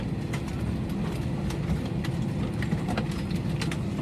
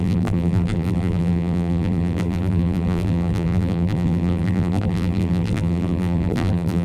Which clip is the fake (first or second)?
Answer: second